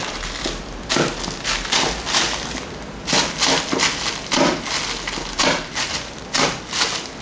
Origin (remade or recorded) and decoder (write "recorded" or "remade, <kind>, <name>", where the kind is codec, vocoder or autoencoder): recorded